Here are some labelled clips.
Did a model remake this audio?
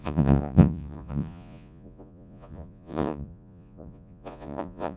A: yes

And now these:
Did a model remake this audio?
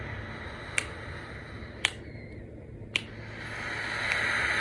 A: no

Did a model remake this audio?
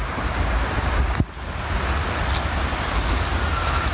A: no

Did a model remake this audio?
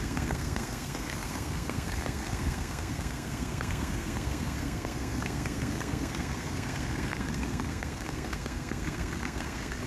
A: yes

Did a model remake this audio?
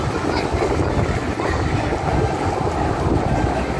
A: no